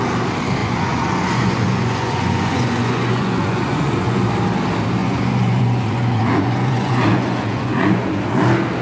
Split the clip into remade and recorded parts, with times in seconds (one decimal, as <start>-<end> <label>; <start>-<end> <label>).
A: 0.0-0.6 recorded; 0.6-4.2 remade; 4.2-5.0 recorded; 5.0-8.2 remade; 8.2-8.8 recorded